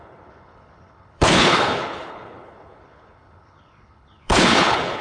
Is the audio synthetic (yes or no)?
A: yes